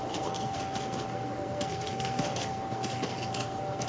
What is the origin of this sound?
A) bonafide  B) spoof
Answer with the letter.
B